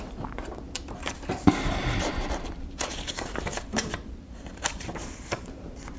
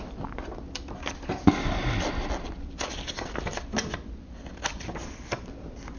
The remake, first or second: first